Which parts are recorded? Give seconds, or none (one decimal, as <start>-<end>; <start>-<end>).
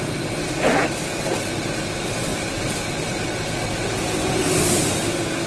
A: 0.0-5.5